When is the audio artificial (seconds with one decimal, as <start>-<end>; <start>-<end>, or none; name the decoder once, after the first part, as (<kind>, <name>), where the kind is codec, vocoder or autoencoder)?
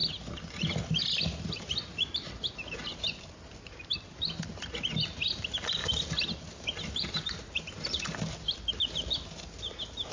none